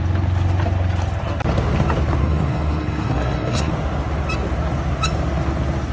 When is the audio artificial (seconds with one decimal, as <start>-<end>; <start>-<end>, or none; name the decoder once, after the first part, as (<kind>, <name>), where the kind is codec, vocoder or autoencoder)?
2.2-3.7 (codec, SNAC)

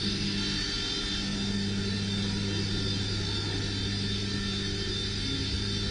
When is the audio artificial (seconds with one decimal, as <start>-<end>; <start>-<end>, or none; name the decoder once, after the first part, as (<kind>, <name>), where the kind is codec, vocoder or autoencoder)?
none

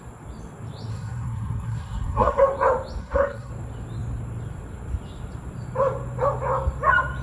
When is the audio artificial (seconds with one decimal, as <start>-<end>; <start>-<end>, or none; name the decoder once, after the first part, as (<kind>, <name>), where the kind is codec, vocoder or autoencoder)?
0.9-2.4 (codec, SNAC); 3.0-3.5

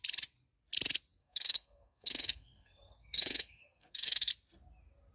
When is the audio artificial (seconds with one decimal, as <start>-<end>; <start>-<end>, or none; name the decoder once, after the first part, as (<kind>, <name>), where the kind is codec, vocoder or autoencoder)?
1.2-4.3 (codec, SNAC)

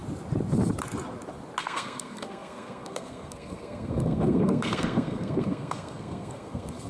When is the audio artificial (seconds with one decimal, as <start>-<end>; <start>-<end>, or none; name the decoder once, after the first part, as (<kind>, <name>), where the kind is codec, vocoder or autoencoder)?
1.6-6.9 (codec, SNAC)

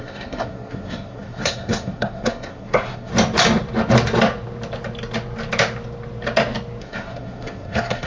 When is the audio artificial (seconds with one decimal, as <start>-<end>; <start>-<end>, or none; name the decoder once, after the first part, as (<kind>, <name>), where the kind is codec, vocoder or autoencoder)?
0.0-3.1 (codec, SNAC); 6.8-8.1